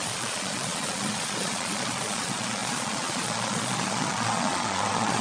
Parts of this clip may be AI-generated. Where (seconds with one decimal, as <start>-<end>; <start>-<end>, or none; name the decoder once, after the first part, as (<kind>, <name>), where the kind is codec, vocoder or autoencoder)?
0.0-5.2 (vocoder, Vocos)